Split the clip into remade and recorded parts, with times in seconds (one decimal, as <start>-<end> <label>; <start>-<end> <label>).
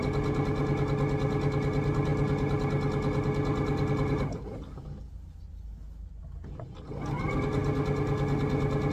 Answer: 0.0-8.9 recorded